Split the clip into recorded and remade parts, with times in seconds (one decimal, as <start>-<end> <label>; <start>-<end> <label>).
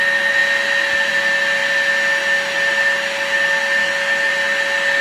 0.0-3.8 recorded; 3.8-4.3 remade; 4.3-5.0 recorded